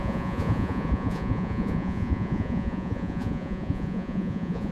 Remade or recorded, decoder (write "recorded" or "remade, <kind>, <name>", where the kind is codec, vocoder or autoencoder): remade, vocoder, Vocos